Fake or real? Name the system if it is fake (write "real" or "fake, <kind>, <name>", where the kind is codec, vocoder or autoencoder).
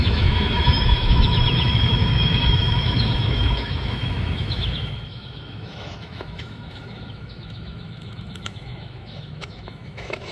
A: fake, autoencoder, DAC-VAE